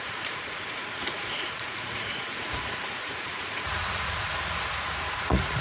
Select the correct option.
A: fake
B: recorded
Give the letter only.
A